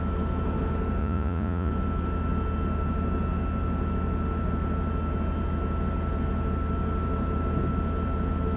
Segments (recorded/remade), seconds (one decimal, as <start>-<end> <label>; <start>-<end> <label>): 0.0-1.0 recorded; 1.0-1.7 remade; 1.7-8.6 recorded